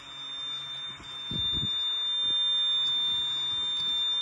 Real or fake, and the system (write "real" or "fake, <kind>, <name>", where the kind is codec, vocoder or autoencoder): real